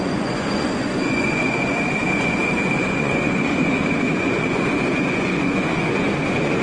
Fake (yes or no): yes